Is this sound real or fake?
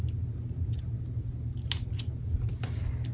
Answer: real